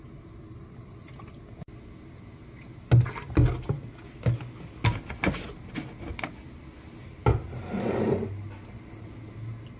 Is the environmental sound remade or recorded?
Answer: recorded